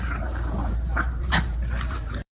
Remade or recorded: remade